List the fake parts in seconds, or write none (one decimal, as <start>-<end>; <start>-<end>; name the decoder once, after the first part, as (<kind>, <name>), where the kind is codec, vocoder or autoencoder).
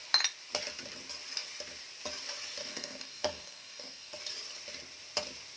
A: 2.6-4.2 (codec, DAC)